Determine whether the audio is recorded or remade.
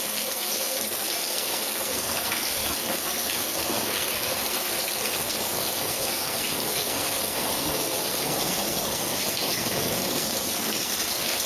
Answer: remade